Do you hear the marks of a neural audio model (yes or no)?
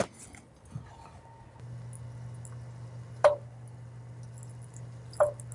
no